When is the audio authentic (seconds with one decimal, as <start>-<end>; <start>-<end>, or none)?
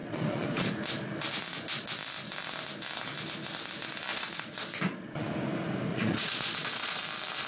0.7-4.1; 5.3-5.9; 7.0-7.5